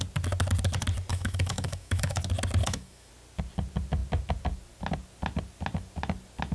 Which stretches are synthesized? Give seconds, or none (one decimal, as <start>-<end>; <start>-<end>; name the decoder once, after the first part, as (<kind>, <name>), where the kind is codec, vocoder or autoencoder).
1.1-2.2 (autoencoder, DAC-VAE); 2.6-3.1